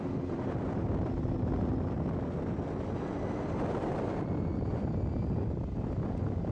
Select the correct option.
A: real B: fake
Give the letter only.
A